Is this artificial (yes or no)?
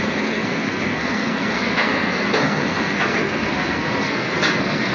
yes